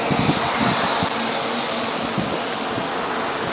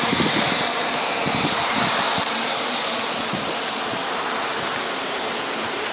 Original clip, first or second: first